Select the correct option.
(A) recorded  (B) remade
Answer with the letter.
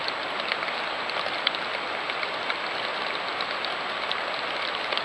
A